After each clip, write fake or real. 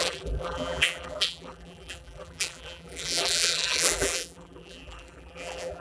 fake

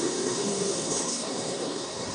fake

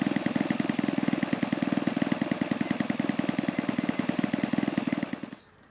real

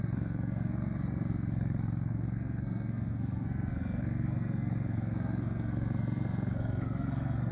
fake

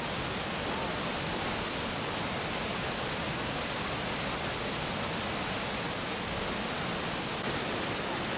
real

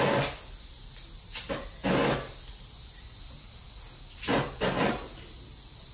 real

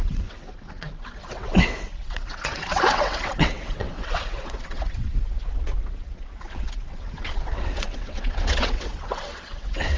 fake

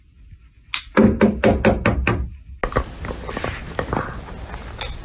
real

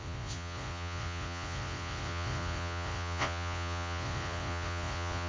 fake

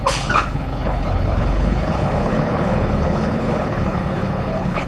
fake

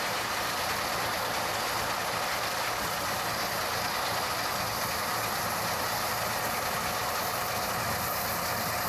real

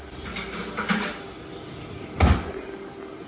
real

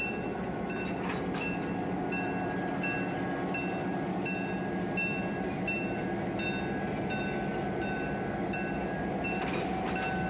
real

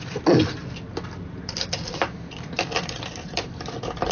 fake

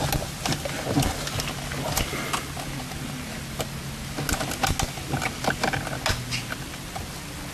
real